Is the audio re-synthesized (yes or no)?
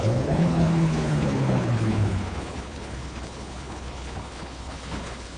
yes